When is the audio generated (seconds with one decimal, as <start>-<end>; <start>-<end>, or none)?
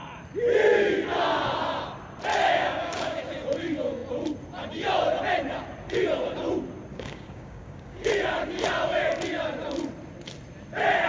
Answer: 2.3-3.2; 6.9-8.1